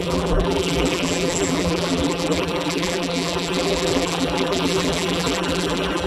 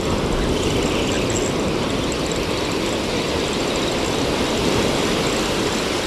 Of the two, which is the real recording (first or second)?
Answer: second